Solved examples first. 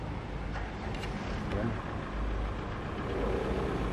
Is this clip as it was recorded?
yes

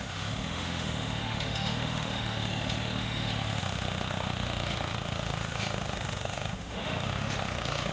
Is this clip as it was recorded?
no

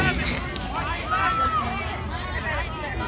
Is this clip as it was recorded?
yes